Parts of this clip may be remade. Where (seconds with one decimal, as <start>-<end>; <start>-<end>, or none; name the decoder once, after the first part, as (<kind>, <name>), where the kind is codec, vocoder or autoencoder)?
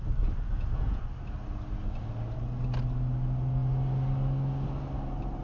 0.5-1.0 (vocoder, Vocos)